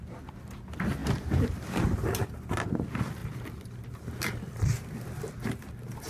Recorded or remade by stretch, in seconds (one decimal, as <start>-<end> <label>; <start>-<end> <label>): 0.0-6.1 recorded